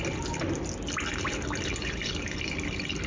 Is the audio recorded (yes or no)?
yes